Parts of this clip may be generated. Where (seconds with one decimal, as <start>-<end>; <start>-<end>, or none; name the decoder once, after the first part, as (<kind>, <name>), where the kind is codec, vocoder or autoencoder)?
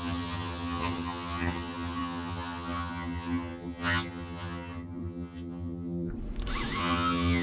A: 0.0-6.1 (vocoder, HiFi-GAN); 6.8-7.4